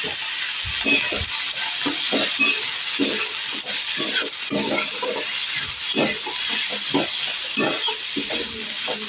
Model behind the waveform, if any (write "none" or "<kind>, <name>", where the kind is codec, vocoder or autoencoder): none